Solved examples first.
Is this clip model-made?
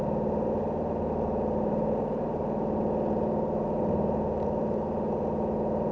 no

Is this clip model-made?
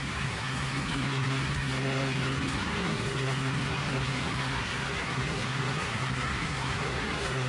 yes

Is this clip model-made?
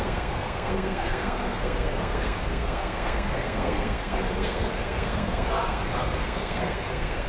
yes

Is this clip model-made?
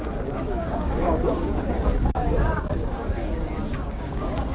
yes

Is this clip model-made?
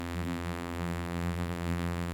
yes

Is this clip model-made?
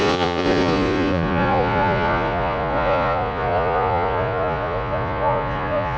yes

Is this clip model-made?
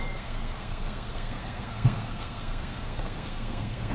yes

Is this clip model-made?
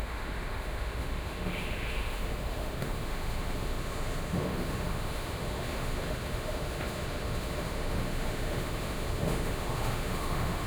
yes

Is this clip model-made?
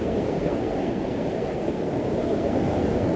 yes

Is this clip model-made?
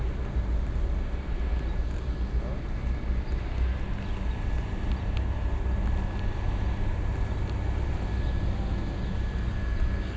no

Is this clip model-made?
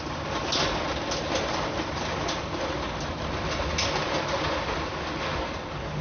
no